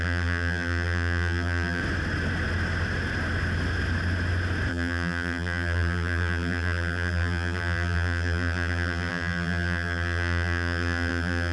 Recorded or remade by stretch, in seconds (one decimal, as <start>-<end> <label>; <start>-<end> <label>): 0.0-1.8 remade; 1.8-4.7 recorded; 4.7-11.5 remade